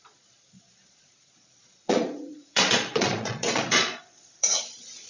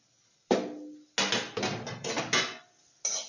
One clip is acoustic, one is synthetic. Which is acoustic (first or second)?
second